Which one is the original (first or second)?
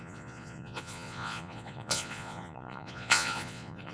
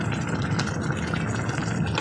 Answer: second